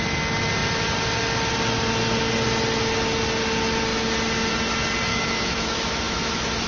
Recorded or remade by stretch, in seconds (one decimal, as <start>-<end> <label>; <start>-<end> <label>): 0.0-5.1 recorded; 5.1-6.7 remade